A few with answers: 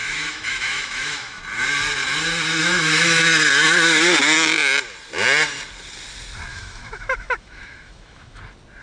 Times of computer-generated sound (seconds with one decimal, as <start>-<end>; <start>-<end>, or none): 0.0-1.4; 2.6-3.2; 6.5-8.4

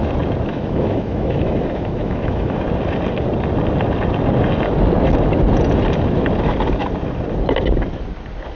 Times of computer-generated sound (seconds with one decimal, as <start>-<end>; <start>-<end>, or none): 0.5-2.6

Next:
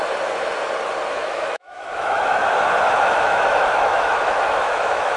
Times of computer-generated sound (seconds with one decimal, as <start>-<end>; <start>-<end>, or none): 1.1-2.4; 3.0-5.2